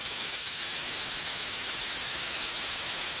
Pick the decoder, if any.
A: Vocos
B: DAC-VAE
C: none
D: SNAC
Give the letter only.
B